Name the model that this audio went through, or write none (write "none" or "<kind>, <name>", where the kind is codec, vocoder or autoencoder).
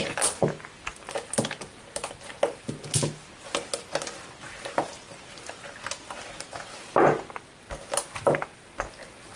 none